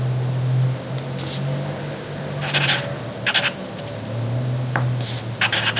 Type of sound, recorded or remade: recorded